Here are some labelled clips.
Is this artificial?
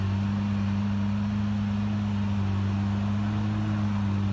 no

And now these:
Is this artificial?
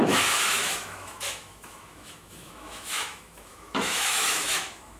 yes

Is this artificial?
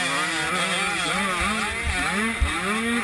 no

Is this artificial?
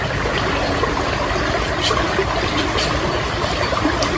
no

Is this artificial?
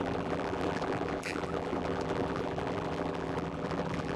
yes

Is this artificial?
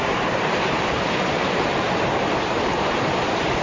yes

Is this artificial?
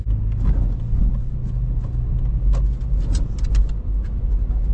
no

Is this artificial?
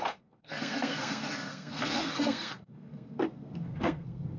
yes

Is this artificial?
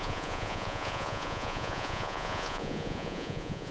yes